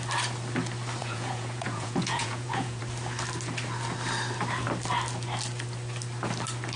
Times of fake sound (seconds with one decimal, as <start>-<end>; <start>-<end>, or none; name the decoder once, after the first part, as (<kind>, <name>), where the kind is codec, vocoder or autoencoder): 1.0-2.8 (vocoder, Vocos)